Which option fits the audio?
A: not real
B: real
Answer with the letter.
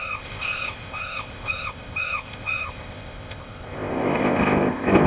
A